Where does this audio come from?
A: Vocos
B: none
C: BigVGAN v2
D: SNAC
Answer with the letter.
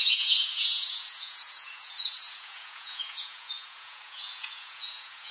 A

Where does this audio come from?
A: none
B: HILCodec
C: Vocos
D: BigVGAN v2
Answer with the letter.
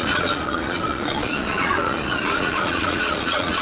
C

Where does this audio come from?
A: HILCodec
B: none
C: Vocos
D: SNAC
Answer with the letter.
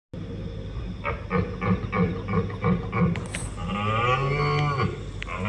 B